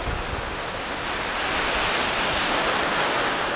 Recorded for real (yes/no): yes